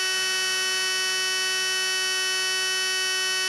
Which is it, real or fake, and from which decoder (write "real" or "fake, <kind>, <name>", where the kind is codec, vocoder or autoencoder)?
real